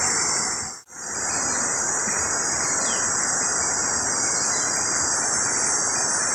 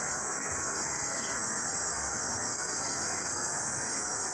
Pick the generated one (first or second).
second